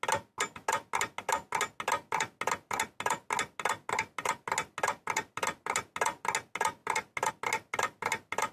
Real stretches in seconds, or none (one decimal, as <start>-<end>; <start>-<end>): 0.0-8.5